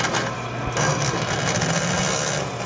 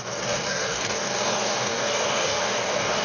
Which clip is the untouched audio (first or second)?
first